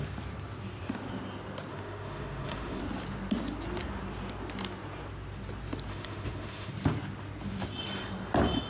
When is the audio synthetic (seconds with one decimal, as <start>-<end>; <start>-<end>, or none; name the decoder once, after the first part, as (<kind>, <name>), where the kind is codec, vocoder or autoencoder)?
1.7-2.8 (autoencoder, DAC-VAE); 5.9-6.7